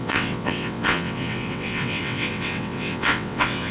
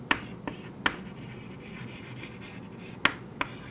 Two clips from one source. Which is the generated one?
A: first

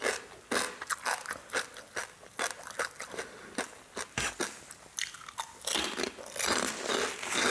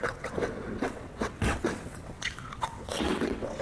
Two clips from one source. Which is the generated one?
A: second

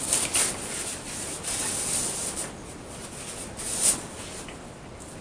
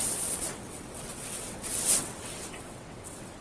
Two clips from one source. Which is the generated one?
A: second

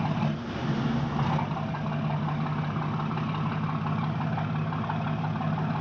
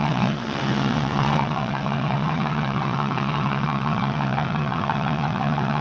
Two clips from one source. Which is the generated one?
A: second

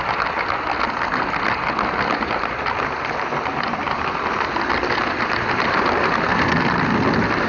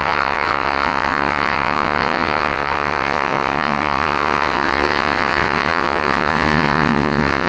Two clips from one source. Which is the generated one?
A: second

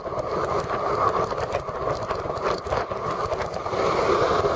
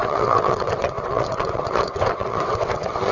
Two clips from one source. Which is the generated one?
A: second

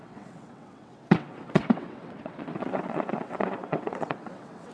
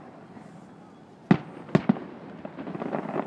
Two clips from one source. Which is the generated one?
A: first